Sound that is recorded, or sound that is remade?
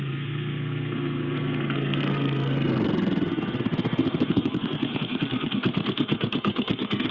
remade